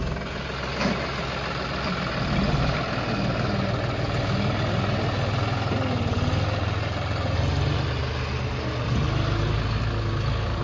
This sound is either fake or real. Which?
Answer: real